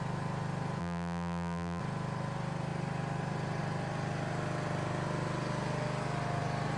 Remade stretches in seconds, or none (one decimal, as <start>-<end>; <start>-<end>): 0.8-1.8

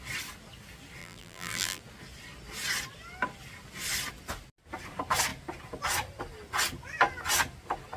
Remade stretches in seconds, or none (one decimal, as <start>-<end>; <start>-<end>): 1.0-1.8

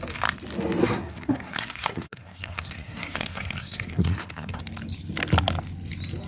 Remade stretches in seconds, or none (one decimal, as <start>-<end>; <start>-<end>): 0.8-4.6